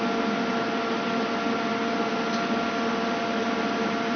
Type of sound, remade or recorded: recorded